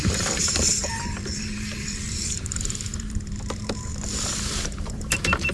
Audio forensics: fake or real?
fake